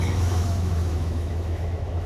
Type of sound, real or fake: fake